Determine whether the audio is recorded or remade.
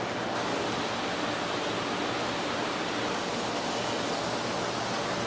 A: recorded